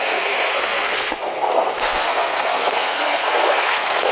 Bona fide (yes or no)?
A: no